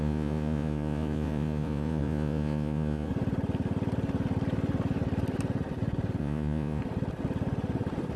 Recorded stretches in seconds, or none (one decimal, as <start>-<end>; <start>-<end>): 3.1-6.2; 6.8-8.2